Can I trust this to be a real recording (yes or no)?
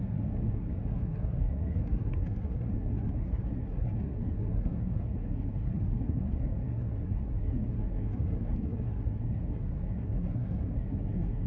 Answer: no